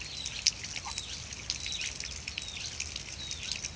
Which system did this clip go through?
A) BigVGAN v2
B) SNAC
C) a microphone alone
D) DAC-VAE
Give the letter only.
C